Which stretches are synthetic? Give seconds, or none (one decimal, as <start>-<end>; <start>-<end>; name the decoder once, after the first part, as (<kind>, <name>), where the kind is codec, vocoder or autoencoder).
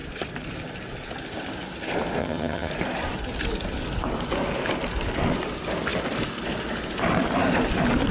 2.2-2.7 (vocoder, HiFi-GAN)